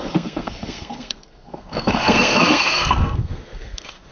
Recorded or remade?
remade